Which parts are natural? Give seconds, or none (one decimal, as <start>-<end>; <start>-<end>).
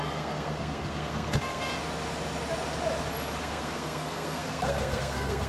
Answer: 1.7-3.4